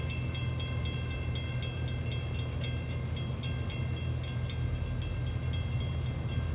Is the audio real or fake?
real